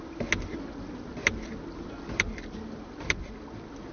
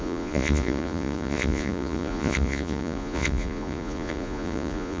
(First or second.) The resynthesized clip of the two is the second